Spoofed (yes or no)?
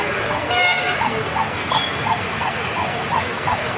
yes